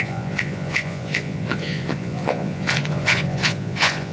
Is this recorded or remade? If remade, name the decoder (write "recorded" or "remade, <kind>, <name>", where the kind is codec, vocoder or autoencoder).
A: remade, vocoder, Vocos